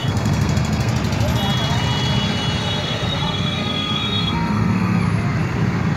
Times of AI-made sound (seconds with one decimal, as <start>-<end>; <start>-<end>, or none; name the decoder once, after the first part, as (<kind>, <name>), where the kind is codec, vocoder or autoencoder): 0.0-0.9 (codec, SNAC); 2.6-5.0